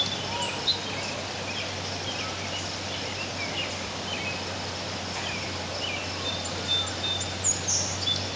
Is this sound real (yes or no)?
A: no